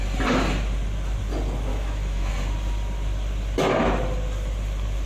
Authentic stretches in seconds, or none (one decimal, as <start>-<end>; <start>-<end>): 0.0-1.7; 2.3-5.1

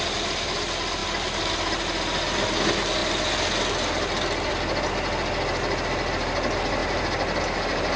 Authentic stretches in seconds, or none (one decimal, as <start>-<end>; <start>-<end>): 0.0-8.0

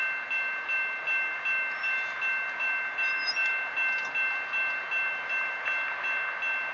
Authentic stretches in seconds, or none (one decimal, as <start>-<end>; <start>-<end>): 0.0-6.7

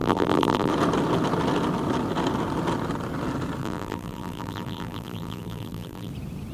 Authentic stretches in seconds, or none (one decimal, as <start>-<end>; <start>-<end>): 0.7-3.6; 6.1-6.5

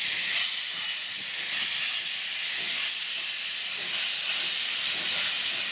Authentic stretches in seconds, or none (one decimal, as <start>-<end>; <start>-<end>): 0.0-5.7

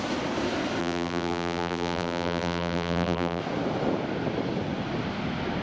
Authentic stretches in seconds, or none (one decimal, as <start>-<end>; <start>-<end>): 0.0-0.8; 3.4-5.6

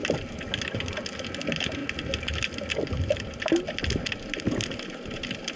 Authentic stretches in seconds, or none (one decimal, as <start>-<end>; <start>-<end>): 0.0-5.6

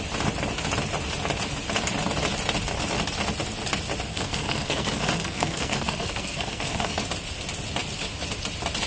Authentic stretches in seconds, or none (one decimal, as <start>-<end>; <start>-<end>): 0.0-4.1; 7.0-8.9